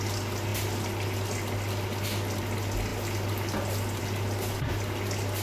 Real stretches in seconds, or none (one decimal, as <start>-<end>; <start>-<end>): 0.0-5.4